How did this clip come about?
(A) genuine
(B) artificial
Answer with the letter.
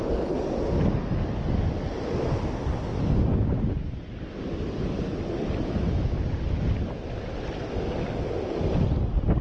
A